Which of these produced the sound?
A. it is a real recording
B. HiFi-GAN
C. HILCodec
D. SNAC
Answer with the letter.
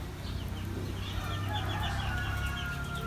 A